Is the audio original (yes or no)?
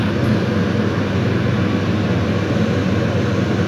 yes